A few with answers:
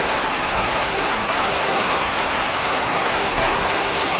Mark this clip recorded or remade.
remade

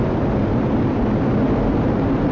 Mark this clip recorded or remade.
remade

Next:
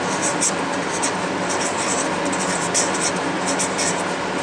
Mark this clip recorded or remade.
recorded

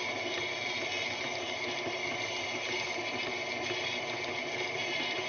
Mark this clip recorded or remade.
recorded